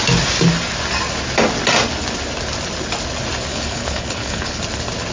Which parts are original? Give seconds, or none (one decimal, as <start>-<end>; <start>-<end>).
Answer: 0.0-3.5; 4.6-5.1